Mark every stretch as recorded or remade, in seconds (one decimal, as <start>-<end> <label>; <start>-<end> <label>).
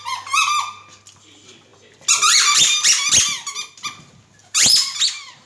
0.0-5.5 recorded